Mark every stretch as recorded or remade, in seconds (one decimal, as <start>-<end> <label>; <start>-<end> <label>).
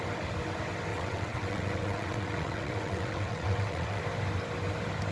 0.0-0.9 recorded; 0.9-4.0 remade; 4.0-5.1 recorded